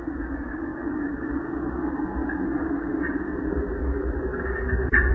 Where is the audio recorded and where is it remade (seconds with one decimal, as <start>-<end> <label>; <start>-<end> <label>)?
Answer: 0.0-0.7 remade; 0.7-2.5 recorded; 2.5-2.9 remade; 2.9-3.5 recorded; 3.5-5.1 remade